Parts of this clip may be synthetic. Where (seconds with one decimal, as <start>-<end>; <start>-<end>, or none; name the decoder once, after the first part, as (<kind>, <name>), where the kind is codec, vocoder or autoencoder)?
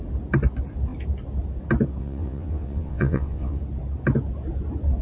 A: 2.0-3.6 (vocoder, WaveNeXt)